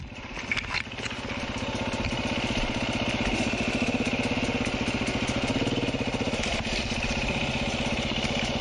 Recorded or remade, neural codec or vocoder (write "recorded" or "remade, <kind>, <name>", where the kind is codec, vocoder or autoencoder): recorded